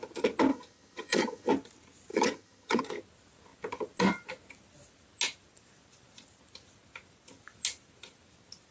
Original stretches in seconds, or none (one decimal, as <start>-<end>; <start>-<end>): 0.0-0.5; 1.5-2.1; 2.8-8.7